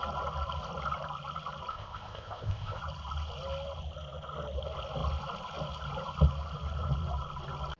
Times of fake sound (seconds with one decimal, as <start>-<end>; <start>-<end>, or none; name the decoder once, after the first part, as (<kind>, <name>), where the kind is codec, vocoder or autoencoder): 1.7-2.8 (codec, ZipCodec)